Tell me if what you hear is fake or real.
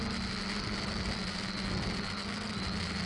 real